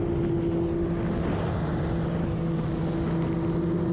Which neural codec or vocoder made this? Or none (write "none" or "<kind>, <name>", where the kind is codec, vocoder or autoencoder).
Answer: none